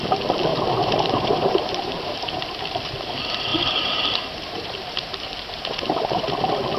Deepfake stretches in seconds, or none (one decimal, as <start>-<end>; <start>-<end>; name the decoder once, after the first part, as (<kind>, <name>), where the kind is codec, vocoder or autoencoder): 0.5-2.4 (vocoder, BigVGAN v2); 3.5-6.2